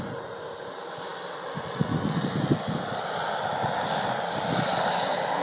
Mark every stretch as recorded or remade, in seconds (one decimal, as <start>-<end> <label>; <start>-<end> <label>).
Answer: 0.0-5.4 recorded